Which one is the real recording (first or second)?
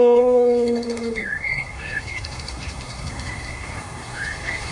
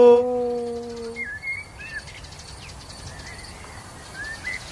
second